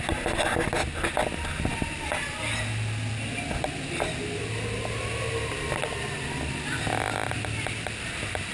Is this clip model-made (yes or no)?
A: no